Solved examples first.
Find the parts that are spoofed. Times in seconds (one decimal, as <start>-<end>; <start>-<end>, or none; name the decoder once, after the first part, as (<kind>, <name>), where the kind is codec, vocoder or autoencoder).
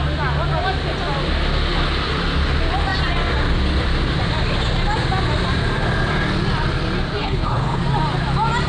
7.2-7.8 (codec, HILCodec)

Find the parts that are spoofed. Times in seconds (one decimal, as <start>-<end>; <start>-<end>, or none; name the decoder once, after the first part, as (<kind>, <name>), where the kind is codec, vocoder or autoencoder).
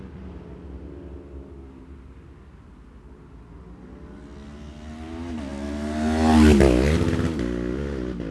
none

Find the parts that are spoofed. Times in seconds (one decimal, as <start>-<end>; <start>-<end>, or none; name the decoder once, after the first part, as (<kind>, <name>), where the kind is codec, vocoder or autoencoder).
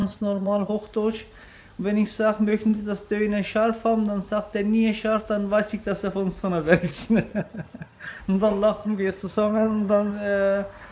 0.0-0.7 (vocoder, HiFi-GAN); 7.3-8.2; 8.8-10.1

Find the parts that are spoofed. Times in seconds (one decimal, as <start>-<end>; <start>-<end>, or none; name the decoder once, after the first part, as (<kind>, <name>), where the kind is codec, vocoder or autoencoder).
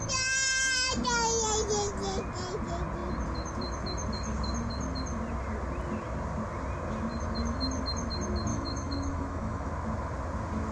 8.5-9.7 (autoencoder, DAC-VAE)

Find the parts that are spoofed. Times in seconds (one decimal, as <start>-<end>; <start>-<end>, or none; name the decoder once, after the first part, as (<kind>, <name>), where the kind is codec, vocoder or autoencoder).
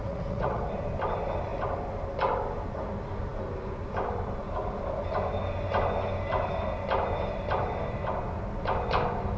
0.0-0.6 (vocoder, Vocos)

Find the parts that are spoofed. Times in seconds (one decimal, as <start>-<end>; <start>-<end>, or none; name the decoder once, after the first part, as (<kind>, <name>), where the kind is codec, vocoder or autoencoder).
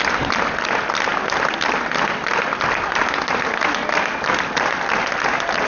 none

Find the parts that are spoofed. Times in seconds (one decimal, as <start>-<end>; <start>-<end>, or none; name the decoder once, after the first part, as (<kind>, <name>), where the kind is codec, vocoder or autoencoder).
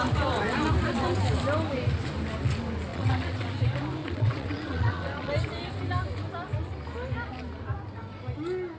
2.9-3.5 (vocoder, WaveNeXt); 4.0-5.3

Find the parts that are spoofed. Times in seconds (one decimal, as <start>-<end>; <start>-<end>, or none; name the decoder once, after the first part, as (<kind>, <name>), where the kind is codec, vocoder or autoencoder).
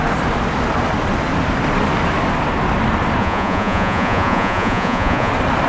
3.2-5.3 (vocoder, Vocos)